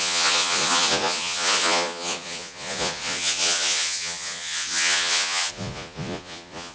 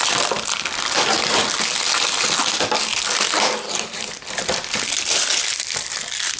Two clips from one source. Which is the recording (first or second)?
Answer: second